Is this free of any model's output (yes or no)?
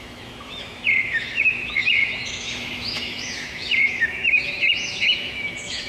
no